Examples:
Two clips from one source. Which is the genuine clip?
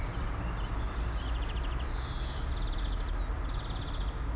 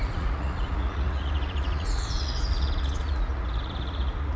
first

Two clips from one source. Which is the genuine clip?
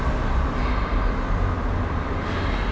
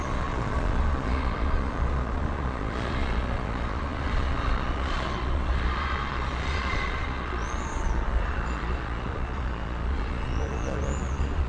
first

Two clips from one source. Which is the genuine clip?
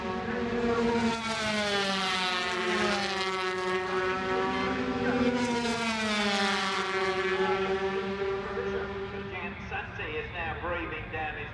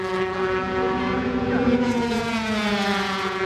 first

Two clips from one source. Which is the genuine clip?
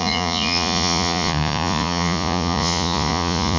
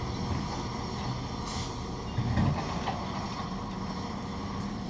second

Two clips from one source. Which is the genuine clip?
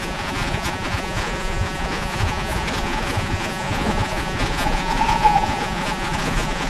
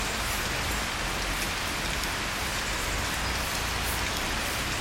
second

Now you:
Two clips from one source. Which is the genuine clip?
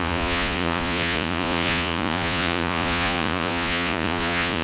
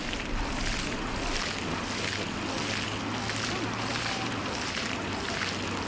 second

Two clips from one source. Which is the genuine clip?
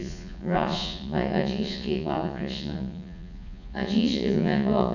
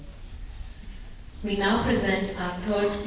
second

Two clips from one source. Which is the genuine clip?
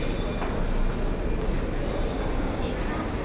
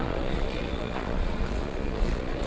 first